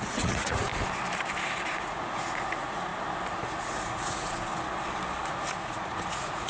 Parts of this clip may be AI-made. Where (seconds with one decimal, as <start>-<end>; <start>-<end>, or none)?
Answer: 0.0-0.7; 1.7-2.9; 3.4-4.5; 5.6-6.5